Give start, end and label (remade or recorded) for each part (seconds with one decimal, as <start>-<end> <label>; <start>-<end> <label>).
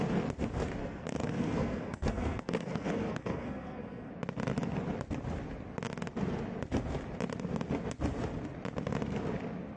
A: 0.0-0.8 recorded; 0.8-4.1 remade; 4.1-9.8 recorded